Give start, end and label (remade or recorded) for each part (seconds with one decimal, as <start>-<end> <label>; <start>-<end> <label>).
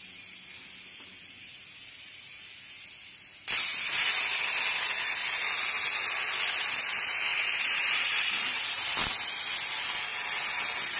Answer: 0.0-7.3 recorded; 7.3-8.7 remade; 8.7-11.0 recorded